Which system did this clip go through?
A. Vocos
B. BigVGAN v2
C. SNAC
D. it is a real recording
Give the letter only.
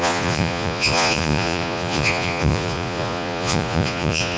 A